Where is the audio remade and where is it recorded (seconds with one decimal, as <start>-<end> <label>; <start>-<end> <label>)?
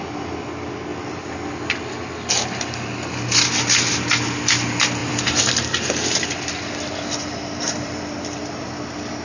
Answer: 0.0-0.9 recorded; 0.9-1.7 remade; 1.7-5.0 recorded; 5.0-8.0 remade; 8.0-9.2 recorded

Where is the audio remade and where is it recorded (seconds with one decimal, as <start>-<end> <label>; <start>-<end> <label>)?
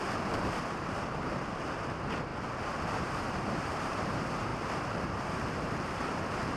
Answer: 0.0-2.3 remade; 2.3-2.8 recorded; 2.8-6.6 remade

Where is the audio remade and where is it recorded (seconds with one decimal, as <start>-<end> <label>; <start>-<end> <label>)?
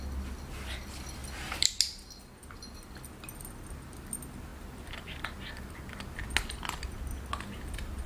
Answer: 0.0-8.1 recorded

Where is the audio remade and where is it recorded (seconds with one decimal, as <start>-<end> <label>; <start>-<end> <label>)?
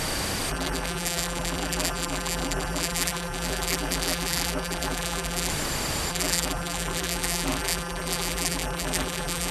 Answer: 0.0-0.5 recorded; 0.5-5.5 remade; 5.5-6.1 recorded; 6.1-9.5 remade